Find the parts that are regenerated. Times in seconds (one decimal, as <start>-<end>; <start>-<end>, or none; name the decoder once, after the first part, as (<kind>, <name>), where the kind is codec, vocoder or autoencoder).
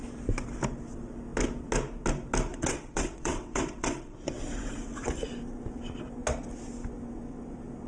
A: 2.5-5.2 (vocoder, WaveNeXt)